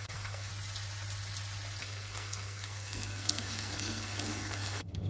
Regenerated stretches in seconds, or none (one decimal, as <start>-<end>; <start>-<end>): 0.0-0.5; 1.8-5.1